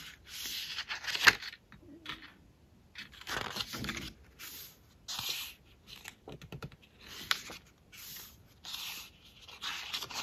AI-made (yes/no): no